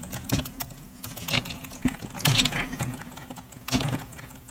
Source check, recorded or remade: remade